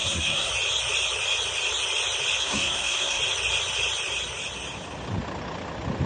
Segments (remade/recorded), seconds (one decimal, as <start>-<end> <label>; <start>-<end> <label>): 0.0-0.5 remade; 0.5-2.4 recorded; 2.4-3.2 remade; 3.2-6.1 recorded